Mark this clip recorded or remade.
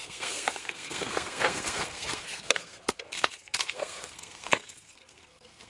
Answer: remade